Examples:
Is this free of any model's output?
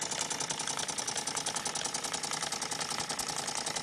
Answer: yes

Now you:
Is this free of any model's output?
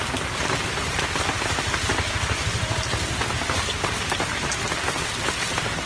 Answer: yes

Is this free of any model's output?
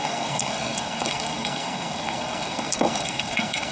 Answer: no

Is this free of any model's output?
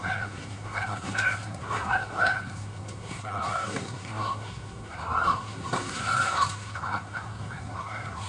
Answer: no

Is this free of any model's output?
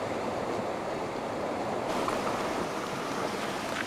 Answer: no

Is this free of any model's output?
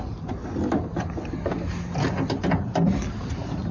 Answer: yes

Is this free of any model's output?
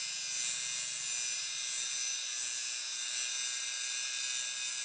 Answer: yes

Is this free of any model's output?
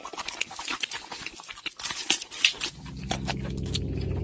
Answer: yes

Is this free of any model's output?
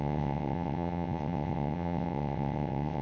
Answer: no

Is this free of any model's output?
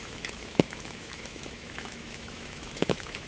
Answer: no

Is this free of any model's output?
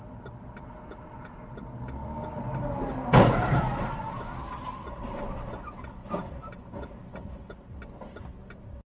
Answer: yes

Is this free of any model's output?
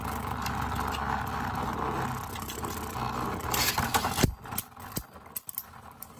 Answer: yes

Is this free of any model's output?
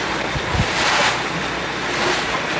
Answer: yes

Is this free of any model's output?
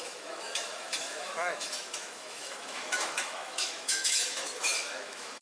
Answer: no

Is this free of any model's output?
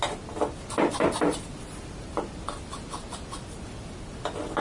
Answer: yes